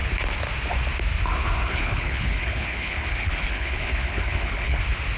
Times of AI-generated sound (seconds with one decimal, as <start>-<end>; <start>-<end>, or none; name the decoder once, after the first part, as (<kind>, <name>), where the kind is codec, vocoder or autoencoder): 1.7-4.8 (codec, HILCodec)